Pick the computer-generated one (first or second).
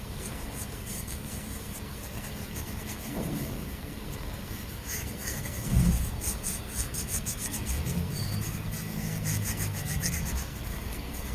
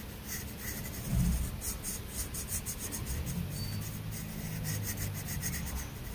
first